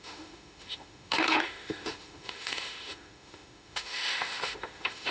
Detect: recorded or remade remade